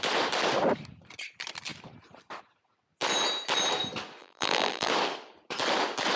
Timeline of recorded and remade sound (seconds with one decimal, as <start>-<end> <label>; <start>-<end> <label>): 0.0-4.2 recorded; 4.2-4.9 remade; 4.9-6.2 recorded